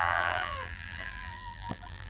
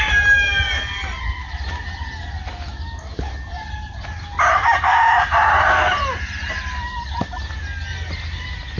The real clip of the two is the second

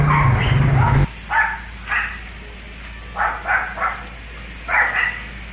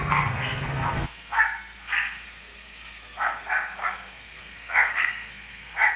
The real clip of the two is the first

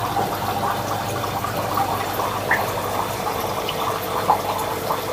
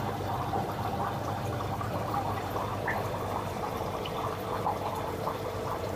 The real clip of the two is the first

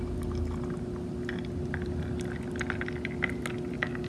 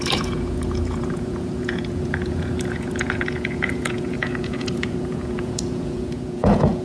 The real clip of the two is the first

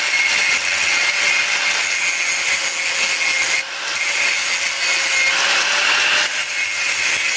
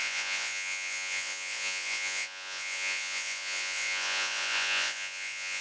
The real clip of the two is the first